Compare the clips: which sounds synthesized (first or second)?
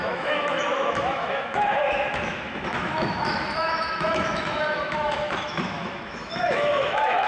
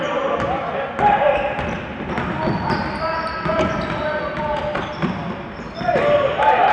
first